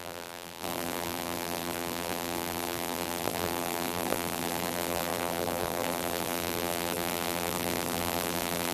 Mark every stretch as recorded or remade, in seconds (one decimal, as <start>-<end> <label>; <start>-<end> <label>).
0.0-8.7 remade